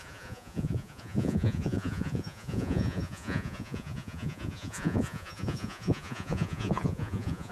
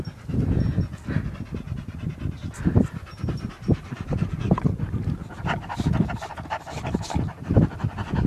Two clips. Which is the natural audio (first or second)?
second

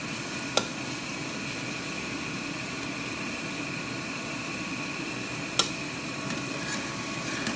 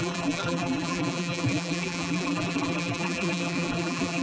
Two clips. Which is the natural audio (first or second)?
first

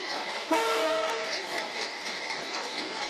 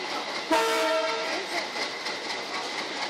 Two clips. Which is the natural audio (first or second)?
second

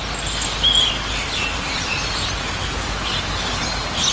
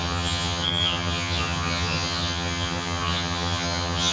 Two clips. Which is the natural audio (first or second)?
first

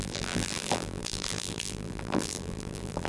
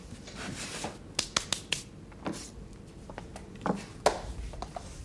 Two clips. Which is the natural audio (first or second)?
second